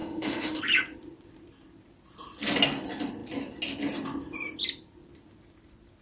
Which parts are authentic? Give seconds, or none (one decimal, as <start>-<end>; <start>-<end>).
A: 0.6-6.0